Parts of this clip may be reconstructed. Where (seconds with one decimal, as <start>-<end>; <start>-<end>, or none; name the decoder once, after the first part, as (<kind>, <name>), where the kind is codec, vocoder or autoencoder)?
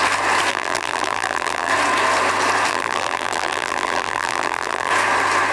0.5-1.7 (vocoder, BigVGAN v2); 2.7-4.9